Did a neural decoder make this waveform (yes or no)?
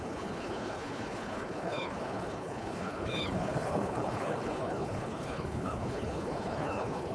yes